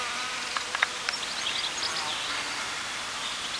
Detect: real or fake real